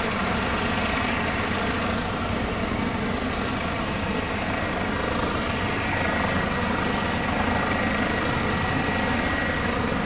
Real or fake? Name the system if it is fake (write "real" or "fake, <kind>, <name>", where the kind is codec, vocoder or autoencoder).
real